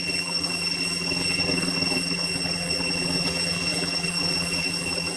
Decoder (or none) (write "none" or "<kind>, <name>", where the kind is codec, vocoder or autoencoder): vocoder, BigVGAN v2